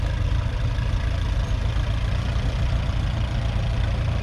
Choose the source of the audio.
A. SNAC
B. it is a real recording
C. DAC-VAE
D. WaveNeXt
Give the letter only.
B